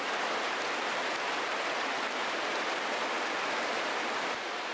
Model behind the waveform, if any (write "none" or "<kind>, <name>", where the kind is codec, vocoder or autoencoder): none